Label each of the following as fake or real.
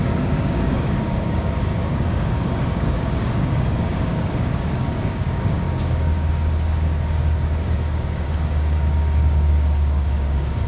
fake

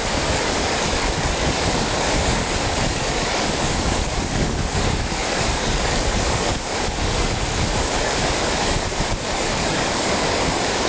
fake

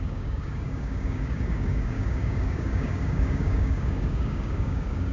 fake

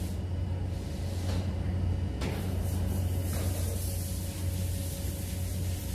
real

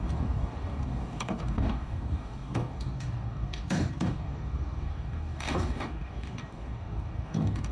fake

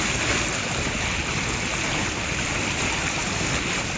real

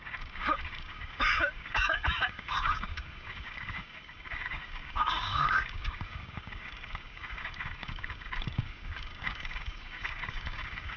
fake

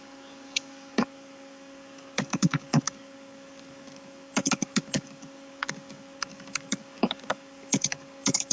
fake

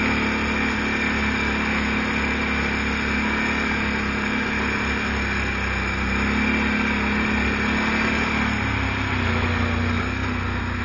real